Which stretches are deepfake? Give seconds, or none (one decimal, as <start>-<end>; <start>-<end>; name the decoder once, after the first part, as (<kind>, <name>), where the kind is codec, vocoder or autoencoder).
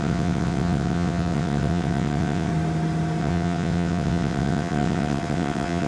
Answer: 0.0-2.5 (vocoder, WaveNeXt); 3.2-5.9